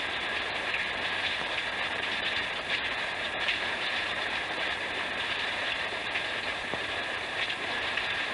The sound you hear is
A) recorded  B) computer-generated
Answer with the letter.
B